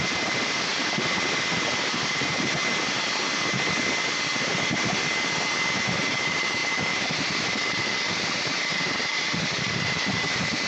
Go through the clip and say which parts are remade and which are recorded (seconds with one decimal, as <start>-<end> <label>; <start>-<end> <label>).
0.0-0.7 remade; 0.7-2.1 recorded; 2.1-2.6 remade; 2.6-6.1 recorded; 6.1-10.7 remade